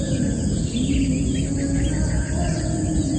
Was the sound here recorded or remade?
recorded